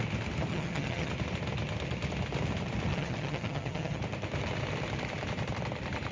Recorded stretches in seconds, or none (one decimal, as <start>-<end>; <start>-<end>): 0.0-0.5; 1.1-2.9; 4.0-6.1